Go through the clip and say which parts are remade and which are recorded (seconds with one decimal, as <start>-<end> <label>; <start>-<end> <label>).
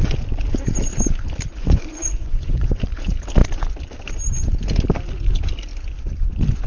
0.0-1.6 recorded; 1.6-2.8 remade; 2.8-6.7 recorded